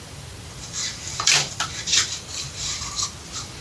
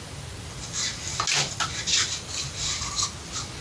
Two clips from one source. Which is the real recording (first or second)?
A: second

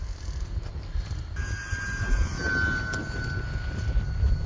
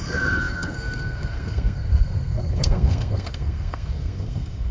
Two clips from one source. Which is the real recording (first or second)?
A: first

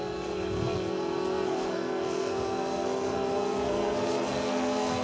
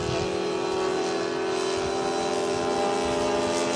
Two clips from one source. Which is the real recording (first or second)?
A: second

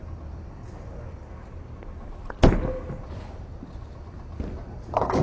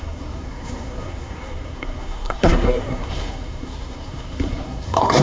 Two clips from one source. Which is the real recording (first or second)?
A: first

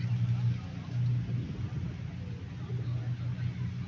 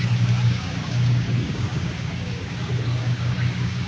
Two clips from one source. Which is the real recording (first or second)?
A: first